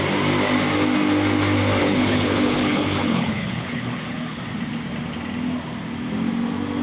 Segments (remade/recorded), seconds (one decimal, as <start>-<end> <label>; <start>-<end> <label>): 0.0-1.8 recorded; 1.8-4.4 remade; 4.4-6.8 recorded